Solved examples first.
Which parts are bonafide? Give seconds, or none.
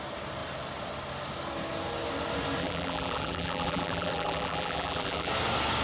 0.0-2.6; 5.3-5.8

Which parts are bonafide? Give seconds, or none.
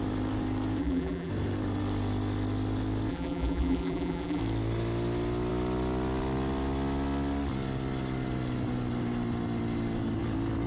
0.0-0.8; 1.3-3.1; 4.4-10.7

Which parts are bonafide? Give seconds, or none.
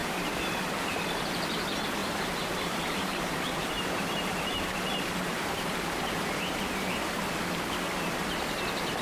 1.0-2.0; 7.2-9.0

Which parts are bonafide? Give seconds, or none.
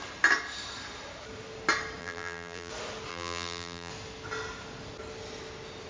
0.0-2.0; 2.7-3.1; 3.9-5.9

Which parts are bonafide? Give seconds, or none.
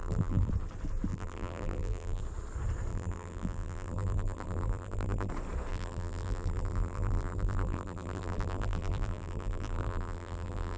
0.5-1.1; 2.2-2.9; 5.3-5.7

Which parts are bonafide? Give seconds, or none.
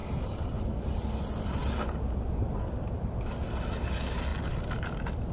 1.2-4.3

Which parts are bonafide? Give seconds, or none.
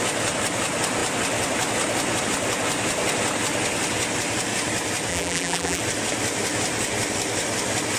0.0-5.1; 5.8-8.0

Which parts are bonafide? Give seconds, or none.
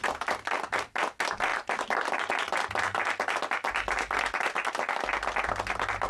0.0-1.5; 2.3-6.1